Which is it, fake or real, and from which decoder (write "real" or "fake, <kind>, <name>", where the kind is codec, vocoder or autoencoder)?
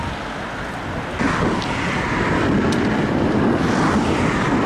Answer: real